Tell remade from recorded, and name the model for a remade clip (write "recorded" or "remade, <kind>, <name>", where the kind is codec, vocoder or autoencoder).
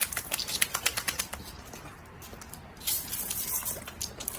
remade, vocoder, BigVGAN v2